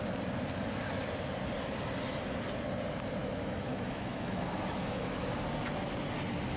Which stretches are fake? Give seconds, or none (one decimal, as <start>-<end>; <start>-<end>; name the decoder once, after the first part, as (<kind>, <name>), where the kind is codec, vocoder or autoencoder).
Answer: 3.2-5.3 (autoencoder, DAC-VAE)